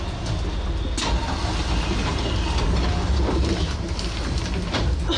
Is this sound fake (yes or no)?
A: no